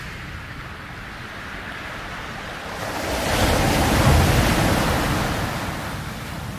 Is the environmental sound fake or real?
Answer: real